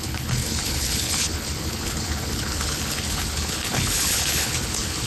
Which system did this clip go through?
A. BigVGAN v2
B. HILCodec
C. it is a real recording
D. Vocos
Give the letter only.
B